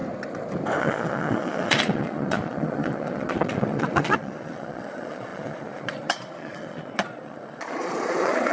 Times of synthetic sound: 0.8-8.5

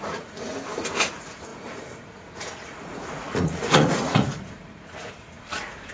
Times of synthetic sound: 0.0-0.5; 1.1-5.9

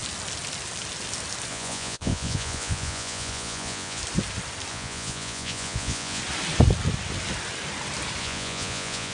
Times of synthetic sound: 1.5-4.0; 4.7-6.2; 8.2-9.1

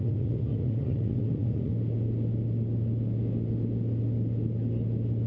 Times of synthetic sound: 0.0-1.7

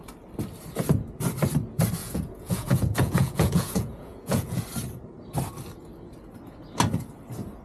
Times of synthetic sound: 2.0-4.6

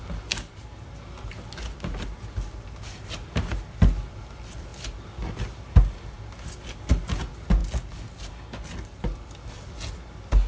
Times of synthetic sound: none

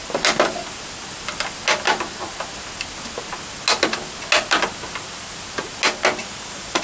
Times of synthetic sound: 6.2-6.8